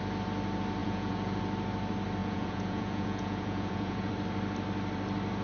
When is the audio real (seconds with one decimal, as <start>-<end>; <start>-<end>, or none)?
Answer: 0.0-0.8; 1.4-2.2; 4.1-5.4